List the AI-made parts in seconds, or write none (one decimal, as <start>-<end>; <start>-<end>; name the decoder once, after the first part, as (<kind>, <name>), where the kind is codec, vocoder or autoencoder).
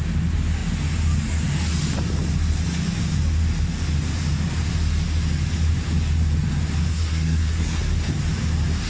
6.9-7.8 (codec, SNAC)